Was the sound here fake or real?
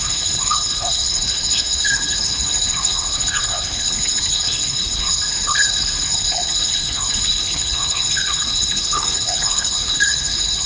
fake